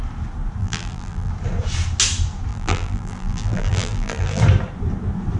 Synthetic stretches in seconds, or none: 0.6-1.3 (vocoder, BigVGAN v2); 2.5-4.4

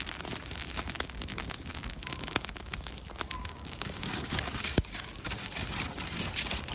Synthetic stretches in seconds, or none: 1.3-2.9 (codec, DAC); 3.4-5.1

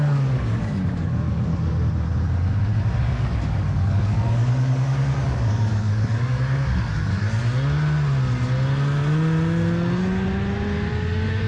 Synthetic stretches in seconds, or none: 0.0-1.5 (codec, DAC); 3.0-7.4; 10.9-11.5

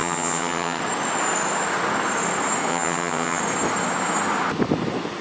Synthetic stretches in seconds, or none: 0.0-0.8 (vocoder, HiFi-GAN); 2.7-3.4

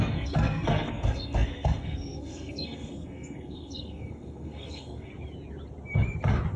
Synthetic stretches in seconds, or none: 0.0-5.1 (codec, SNAC)